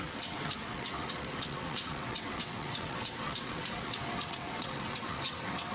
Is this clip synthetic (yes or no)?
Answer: yes